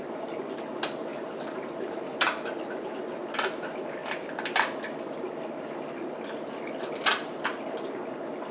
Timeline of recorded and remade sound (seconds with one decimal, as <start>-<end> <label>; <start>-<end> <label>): 0.0-1.1 recorded; 1.1-3.0 remade; 3.0-8.5 recorded